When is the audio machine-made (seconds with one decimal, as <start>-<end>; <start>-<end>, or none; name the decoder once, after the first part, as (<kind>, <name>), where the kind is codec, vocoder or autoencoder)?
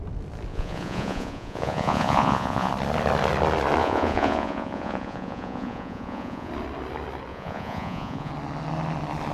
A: 0.5-2.7 (vocoder, Vocos); 3.8-6.5; 7.3-8.3